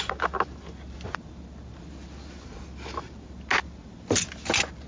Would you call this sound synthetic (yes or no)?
no